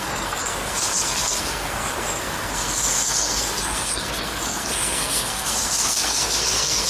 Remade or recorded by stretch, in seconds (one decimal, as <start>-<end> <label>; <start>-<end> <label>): 0.0-6.9 remade